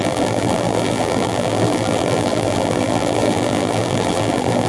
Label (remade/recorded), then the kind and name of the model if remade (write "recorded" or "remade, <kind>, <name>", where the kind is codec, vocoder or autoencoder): remade, vocoder, BigVGAN v2